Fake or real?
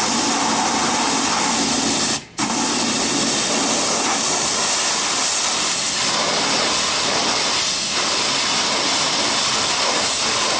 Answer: real